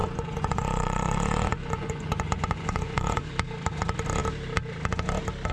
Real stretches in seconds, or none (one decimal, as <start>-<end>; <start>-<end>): 3.3-5.5